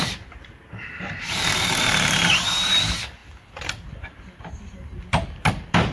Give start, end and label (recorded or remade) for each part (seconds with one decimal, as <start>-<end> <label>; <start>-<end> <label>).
0.0-3.2 remade; 3.2-5.5 recorded; 5.5-5.9 remade